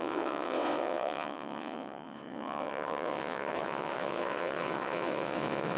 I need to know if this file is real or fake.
fake